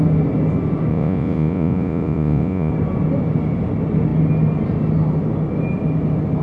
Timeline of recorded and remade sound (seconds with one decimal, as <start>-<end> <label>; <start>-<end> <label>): 0.0-0.9 recorded; 0.9-2.7 remade; 2.7-6.4 recorded